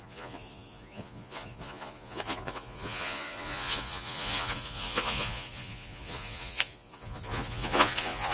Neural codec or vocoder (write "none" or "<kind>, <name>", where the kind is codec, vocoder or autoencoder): vocoder, Vocos